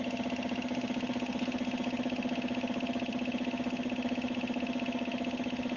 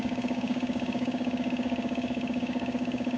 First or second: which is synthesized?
second